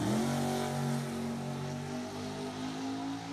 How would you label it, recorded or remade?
recorded